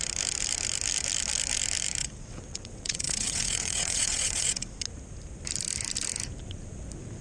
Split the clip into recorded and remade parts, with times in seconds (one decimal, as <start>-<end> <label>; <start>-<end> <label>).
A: 0.0-2.0 recorded; 2.0-4.7 remade; 4.7-7.2 recorded